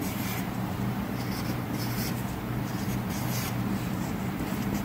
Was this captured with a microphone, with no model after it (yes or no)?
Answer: no